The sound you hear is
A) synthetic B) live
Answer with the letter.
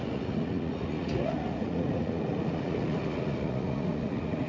A